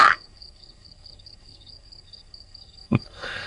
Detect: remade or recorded remade